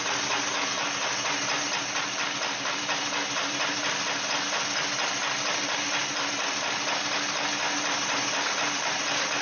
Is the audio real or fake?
real